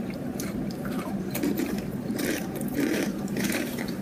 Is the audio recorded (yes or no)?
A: no